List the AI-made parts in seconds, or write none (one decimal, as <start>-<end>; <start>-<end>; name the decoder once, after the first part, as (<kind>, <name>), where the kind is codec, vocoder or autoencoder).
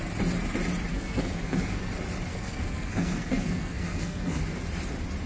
0.9-1.9 (codec, SNAC); 2.3-4.4